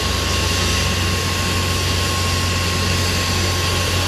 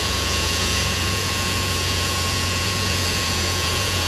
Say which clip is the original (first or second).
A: first